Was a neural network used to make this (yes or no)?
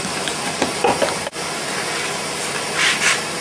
no